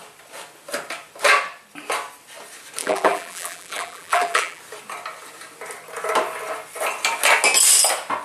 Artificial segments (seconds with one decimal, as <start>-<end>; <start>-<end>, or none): 2.8-4.6